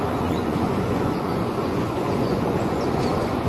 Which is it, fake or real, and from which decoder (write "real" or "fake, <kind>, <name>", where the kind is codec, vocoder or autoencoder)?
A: fake, vocoder, Vocos